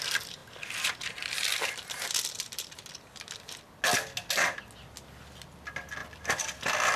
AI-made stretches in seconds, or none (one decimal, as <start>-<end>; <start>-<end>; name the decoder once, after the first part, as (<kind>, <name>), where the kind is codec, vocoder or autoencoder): none